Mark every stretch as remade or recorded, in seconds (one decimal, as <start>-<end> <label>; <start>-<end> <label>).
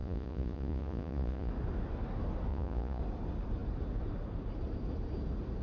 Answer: 0.0-1.5 remade; 1.5-2.5 recorded; 2.5-3.0 remade; 3.0-5.6 recorded